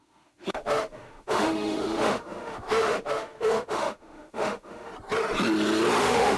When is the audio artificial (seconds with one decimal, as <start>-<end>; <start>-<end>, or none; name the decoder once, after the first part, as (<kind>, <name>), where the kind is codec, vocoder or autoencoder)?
0.0-4.9 (autoencoder, DAC-VAE); 6.0-6.4